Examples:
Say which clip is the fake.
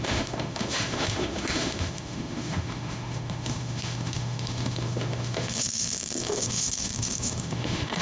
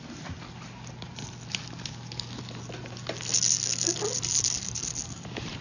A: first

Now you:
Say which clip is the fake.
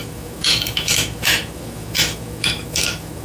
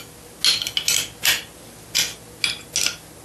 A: first